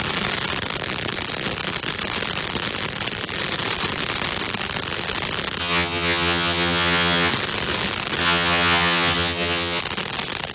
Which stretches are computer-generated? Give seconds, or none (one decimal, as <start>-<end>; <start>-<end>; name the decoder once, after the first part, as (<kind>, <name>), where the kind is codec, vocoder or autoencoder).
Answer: 5.6-7.3 (vocoder, HiFi-GAN); 8.2-9.8